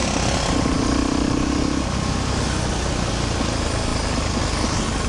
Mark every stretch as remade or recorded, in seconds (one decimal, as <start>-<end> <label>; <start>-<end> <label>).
0.0-5.1 recorded